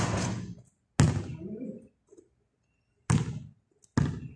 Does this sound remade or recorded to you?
recorded